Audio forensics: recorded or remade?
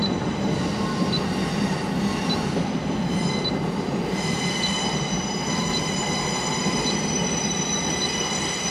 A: recorded